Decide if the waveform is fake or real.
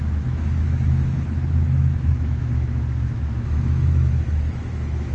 fake